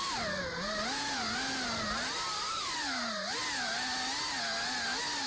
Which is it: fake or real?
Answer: real